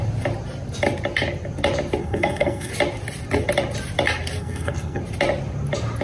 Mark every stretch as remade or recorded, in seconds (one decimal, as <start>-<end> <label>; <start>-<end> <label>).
0.0-2.0 recorded; 2.0-2.7 remade; 2.7-4.4 recorded; 4.4-5.0 remade; 5.0-6.0 recorded